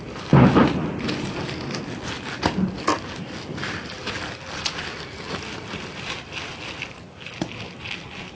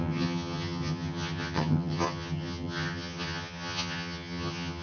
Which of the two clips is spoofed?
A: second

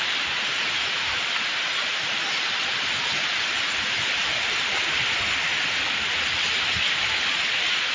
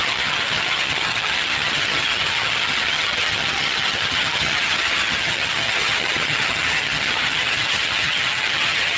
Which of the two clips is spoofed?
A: second